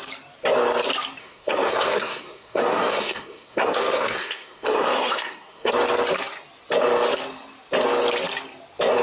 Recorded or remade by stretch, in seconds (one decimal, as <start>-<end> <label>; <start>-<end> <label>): 0.0-1.2 recorded; 1.2-5.7 remade; 5.7-9.0 recorded